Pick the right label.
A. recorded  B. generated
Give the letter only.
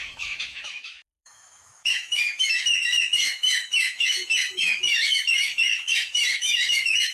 B